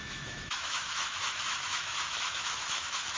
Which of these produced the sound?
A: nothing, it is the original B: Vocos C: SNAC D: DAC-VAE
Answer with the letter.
D